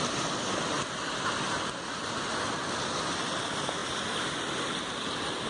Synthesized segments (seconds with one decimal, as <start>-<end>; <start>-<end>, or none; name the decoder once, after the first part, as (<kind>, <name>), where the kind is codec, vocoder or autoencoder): none